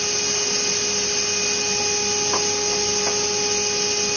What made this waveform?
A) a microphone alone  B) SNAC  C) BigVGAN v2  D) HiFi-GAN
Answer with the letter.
A